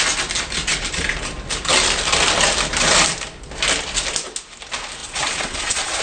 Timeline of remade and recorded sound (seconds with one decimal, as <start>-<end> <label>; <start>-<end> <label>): 0.0-5.0 recorded; 5.0-6.0 remade